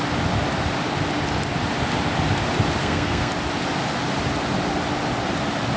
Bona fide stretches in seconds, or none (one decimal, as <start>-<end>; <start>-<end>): 0.0-2.8; 3.3-5.8